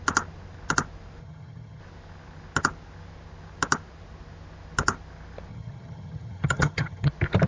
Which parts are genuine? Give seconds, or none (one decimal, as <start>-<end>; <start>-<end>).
0.0-1.2; 1.8-5.5; 7.1-7.5